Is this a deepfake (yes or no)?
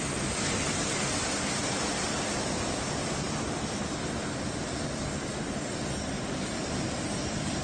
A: no